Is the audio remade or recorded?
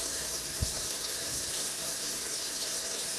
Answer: remade